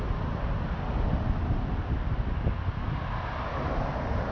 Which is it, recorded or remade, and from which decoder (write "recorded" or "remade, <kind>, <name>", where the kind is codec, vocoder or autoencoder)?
recorded